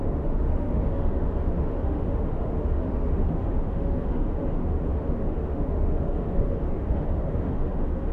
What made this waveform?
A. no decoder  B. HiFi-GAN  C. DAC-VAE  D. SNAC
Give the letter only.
C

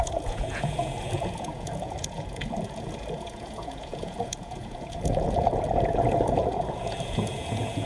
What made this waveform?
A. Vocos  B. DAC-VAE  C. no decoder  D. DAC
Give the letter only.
A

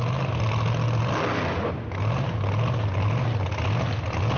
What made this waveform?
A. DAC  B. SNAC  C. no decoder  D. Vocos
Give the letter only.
C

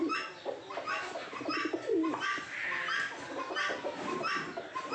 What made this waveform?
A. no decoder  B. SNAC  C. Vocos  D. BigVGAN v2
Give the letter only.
A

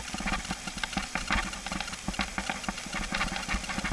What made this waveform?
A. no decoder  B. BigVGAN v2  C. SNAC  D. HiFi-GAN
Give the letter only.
A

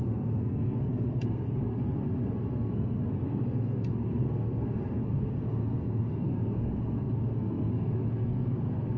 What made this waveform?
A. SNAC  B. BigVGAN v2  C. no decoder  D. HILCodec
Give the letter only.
A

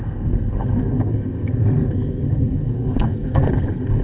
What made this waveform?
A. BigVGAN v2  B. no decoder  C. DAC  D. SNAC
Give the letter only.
D